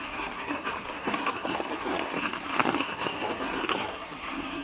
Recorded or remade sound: remade